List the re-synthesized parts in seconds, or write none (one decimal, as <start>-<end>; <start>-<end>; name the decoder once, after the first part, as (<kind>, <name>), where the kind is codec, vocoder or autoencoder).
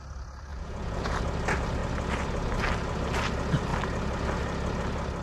0.5-1.2 (vocoder, Vocos)